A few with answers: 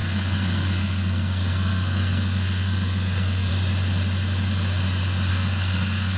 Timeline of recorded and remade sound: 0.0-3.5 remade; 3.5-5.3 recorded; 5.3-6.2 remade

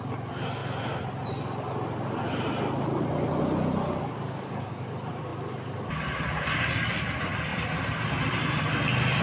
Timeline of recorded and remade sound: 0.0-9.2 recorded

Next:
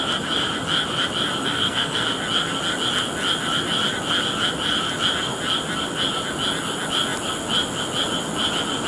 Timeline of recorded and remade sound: 0.0-1.4 recorded; 1.4-2.1 remade; 2.1-8.9 recorded

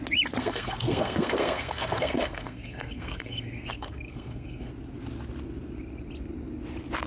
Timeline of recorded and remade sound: 0.0-0.4 recorded; 0.4-4.7 remade; 4.7-7.1 recorded

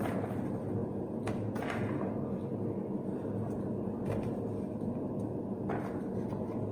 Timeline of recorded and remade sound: 0.0-6.7 recorded